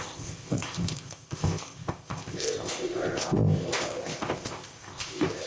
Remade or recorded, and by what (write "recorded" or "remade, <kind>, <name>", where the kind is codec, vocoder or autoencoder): remade, codec, ZipCodec